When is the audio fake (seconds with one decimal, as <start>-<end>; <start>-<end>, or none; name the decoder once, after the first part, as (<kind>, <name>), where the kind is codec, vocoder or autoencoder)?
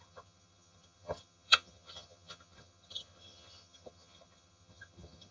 0.0-5.3 (vocoder, HiFi-GAN)